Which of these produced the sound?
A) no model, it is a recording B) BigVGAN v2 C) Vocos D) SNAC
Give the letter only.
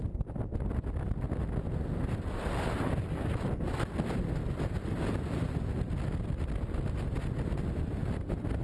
A